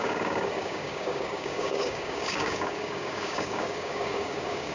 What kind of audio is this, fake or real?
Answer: fake